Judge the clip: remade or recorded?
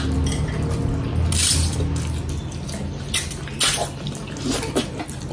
recorded